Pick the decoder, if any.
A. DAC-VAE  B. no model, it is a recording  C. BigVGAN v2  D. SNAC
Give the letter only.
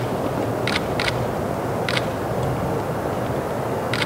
B